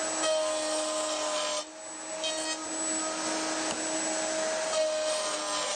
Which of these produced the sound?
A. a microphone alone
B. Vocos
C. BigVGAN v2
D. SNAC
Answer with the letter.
A